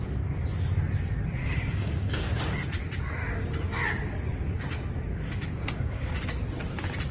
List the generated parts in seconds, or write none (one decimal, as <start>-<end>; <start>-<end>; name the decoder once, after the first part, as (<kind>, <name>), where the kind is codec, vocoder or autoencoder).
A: 1.4-2.4 (codec, DAC); 3.2-3.8; 5.1-6.1